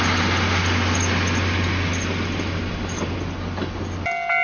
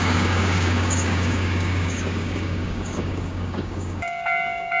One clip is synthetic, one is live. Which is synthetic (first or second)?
second